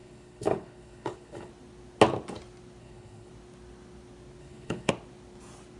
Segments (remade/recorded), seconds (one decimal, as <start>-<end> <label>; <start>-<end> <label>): 0.0-1.5 remade; 1.5-2.8 recorded; 2.8-3.3 remade; 3.3-4.4 recorded; 4.4-4.9 remade; 4.9-5.8 recorded